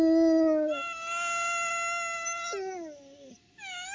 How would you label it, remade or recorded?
recorded